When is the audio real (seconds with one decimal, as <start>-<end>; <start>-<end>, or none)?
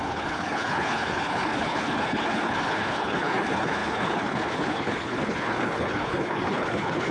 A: none